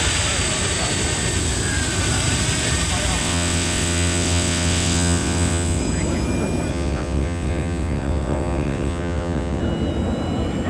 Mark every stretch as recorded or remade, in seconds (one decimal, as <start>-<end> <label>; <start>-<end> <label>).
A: 0.0-3.2 recorded; 3.2-5.8 remade; 5.8-6.7 recorded; 6.7-9.6 remade; 9.6-10.7 recorded